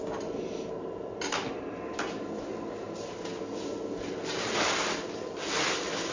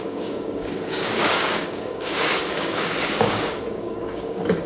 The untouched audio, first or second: first